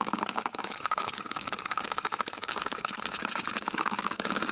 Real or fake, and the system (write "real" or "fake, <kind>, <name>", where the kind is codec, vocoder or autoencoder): fake, codec, DAC